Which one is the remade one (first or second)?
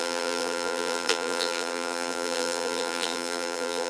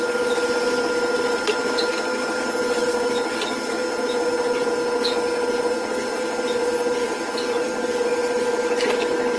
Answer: first